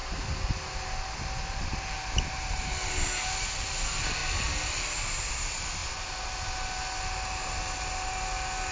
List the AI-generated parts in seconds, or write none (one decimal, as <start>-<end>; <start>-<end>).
none